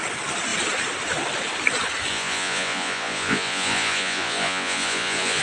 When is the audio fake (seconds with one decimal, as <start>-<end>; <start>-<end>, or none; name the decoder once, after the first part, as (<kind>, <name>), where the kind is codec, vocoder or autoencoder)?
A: 2.1-5.4 (vocoder, Vocos)